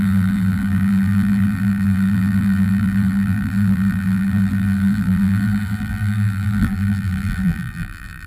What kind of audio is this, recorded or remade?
remade